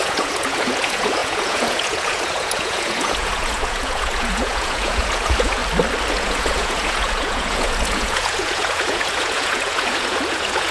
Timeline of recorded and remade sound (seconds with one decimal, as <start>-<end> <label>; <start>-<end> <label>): 0.0-5.6 remade; 5.6-6.1 recorded; 6.1-10.7 remade